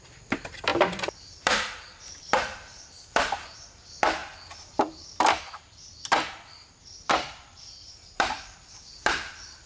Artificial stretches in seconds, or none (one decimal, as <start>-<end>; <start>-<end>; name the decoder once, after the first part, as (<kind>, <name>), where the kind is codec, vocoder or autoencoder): 0.0-9.7 (vocoder, BigVGAN v2)